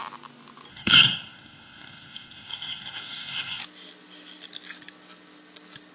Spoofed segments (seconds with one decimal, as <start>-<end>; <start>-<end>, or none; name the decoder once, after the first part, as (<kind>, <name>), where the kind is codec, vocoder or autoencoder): 0.7-3.6 (codec, SNAC)